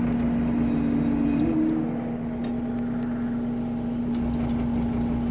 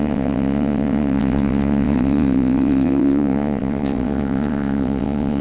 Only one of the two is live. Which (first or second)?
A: first